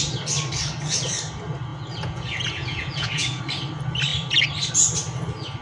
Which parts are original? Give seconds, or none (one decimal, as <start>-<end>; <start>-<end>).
0.0-1.7; 3.4-5.6